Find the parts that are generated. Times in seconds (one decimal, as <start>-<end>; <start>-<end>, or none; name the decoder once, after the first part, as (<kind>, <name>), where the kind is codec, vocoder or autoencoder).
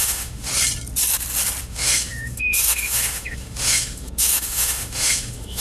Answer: 0.0-0.5 (autoencoder, DAC-VAE); 1.6-5.6